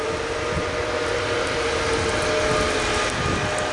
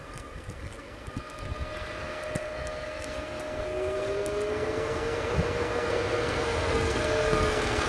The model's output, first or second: second